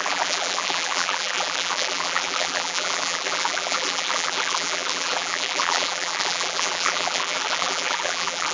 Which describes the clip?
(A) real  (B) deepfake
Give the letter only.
B